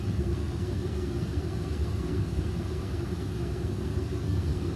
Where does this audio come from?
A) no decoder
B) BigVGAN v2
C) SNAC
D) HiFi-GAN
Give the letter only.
C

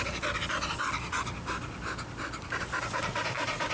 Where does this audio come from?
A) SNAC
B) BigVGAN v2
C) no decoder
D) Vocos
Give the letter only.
C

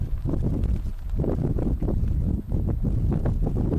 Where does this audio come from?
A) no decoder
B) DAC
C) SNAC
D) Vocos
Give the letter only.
A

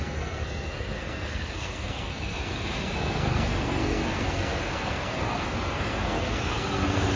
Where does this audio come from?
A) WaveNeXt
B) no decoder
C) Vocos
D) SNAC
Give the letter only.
D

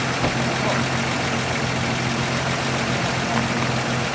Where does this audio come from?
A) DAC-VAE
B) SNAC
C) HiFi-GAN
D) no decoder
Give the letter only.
D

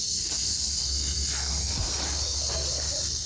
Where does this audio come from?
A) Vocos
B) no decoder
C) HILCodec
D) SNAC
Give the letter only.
D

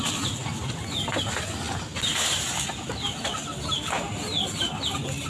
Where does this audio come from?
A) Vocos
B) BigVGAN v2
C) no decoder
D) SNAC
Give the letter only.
C